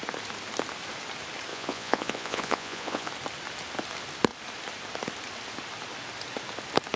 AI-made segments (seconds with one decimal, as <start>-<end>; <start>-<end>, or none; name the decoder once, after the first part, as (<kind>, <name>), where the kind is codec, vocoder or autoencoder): 1.5-3.1 (vocoder, Vocos)